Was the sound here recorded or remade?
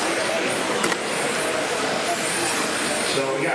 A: recorded